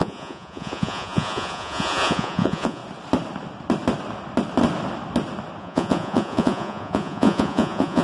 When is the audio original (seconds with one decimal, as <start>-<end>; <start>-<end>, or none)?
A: 2.8-5.6